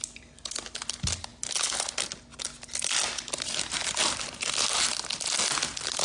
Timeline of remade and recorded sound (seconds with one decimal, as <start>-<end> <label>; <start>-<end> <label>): 0.0-6.0 recorded